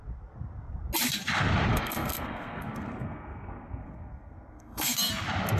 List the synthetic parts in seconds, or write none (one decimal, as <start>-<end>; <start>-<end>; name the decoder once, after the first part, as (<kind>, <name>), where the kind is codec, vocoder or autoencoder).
1.7-5.1 (codec, SNAC)